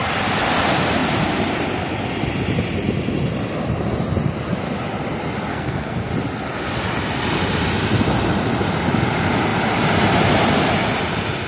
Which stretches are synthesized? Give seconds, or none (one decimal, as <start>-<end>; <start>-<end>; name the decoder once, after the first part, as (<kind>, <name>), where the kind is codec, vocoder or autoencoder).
5.5-6.1 (codec, SNAC)